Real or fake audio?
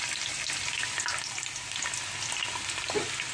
real